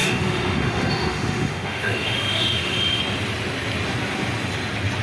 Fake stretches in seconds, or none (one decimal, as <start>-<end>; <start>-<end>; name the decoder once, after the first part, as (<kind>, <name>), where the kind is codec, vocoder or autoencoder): 0.0-3.0 (autoencoder, DAC-VAE)